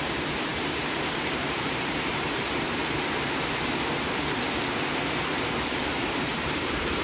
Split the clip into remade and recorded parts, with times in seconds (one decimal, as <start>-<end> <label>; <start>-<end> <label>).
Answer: 0.0-2.8 remade; 2.8-5.8 recorded; 5.8-7.0 remade